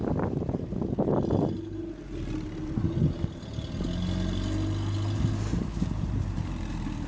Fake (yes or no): no